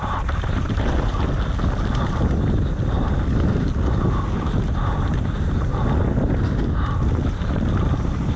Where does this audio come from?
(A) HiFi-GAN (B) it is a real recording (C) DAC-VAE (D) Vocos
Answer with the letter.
B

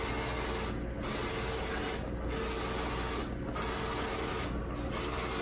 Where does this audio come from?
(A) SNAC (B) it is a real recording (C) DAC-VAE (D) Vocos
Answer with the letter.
B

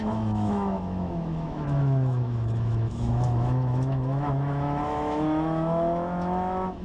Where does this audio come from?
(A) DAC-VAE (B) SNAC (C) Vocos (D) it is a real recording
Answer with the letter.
A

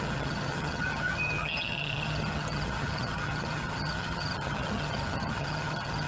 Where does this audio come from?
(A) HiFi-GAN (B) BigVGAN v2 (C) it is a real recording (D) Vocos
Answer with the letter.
A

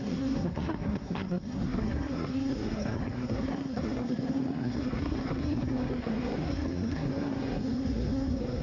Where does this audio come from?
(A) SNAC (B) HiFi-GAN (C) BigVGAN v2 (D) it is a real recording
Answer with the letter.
A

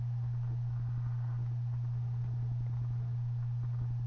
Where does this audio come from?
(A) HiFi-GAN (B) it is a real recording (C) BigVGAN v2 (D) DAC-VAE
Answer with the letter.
B